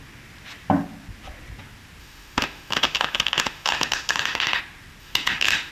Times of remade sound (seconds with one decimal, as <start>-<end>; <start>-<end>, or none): 2.0-4.6; 5.0-5.7